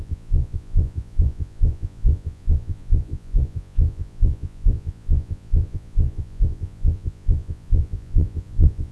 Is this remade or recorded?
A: remade